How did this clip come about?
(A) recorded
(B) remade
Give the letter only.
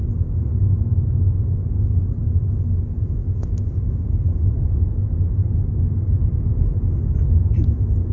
A